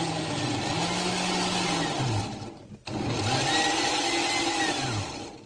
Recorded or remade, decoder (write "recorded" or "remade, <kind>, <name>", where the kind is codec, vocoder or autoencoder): recorded